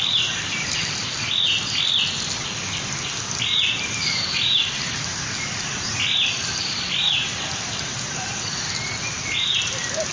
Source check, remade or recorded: recorded